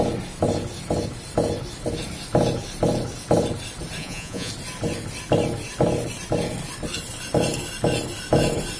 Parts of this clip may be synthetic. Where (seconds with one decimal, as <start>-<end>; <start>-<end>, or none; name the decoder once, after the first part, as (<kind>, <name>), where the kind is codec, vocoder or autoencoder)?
4.0-4.5 (vocoder, Vocos)